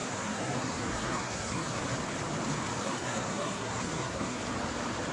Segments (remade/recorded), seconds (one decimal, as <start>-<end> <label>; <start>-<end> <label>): 0.0-1.8 remade; 1.8-2.8 recorded; 2.8-4.4 remade; 4.4-5.1 recorded